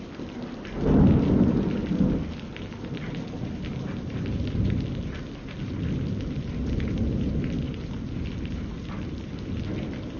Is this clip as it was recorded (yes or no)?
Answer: yes